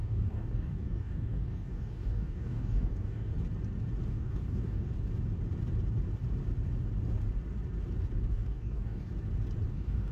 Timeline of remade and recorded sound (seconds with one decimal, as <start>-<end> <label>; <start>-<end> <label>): 0.0-3.3 remade; 3.3-4.1 recorded; 4.1-4.9 remade; 4.9-8.3 recorded; 8.3-9.1 remade; 9.1-9.7 recorded; 9.7-10.1 remade